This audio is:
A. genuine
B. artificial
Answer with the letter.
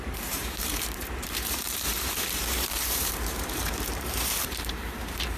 B